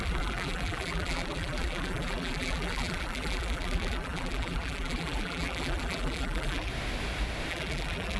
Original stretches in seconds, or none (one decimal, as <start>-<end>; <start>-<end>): 6.7-7.5